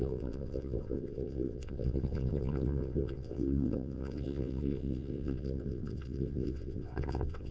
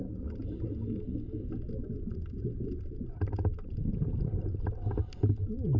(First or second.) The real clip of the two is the second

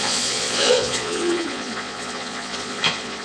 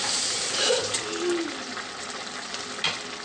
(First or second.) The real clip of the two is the second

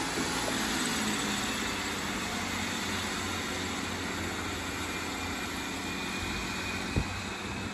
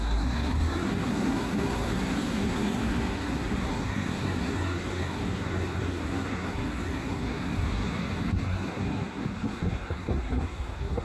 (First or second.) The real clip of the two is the first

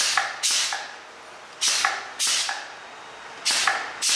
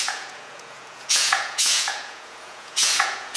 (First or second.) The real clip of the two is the first